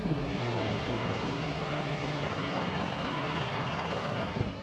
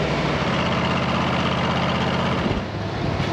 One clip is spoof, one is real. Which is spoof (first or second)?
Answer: first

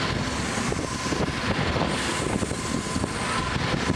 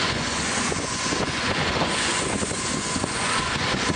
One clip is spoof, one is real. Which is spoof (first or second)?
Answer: second